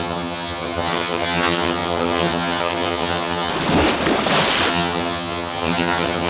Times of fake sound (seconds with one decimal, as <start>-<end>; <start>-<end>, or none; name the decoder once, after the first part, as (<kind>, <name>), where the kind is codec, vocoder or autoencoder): 0.0-3.5 (vocoder, HiFi-GAN); 4.7-6.3